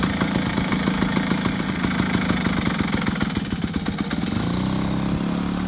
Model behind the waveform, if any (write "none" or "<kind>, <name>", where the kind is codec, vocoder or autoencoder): none